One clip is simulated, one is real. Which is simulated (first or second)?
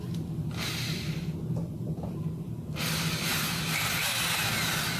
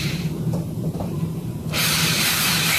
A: second